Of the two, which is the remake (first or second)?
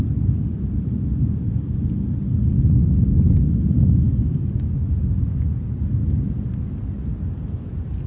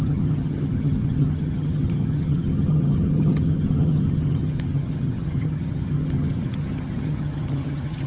second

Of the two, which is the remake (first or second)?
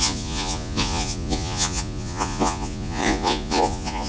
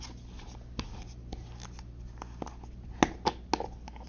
first